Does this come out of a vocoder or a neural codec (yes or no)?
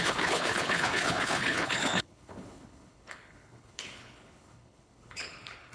yes